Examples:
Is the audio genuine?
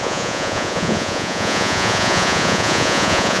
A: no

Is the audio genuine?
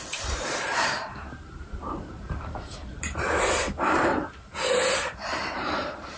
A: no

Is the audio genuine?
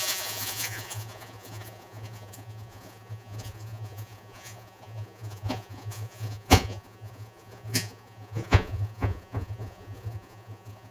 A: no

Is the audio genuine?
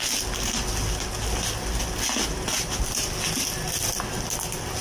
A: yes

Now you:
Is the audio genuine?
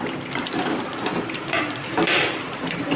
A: no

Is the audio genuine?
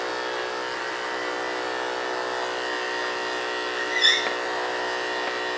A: yes